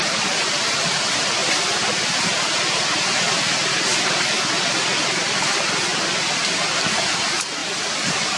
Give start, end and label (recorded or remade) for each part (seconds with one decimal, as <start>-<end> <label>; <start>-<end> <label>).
0.0-1.4 recorded; 1.4-1.9 remade; 1.9-5.9 recorded; 5.9-6.9 remade; 6.9-7.6 recorded; 7.6-8.4 remade